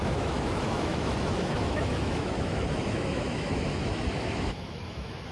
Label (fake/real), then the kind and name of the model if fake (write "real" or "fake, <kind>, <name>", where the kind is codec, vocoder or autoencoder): fake, autoencoder, DAC-VAE